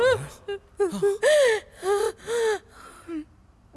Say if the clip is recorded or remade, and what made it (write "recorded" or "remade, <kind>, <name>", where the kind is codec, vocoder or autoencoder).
recorded